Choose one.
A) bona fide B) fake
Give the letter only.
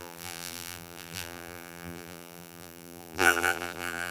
B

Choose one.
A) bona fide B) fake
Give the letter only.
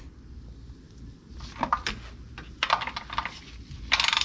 A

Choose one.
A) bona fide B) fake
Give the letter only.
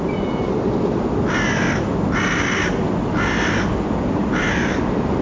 A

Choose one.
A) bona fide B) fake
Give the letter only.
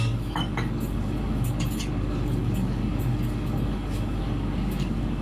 B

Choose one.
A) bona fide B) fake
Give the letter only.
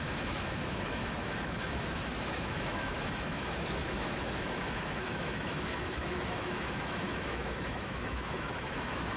B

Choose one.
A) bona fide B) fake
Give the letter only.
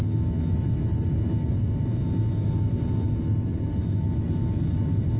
A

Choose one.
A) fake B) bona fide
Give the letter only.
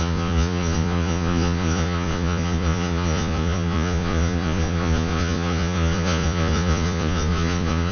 A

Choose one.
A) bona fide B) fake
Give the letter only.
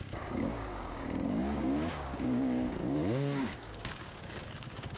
B